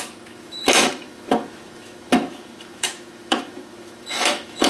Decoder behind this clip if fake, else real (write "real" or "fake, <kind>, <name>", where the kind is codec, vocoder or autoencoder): fake, autoencoder, DAC-VAE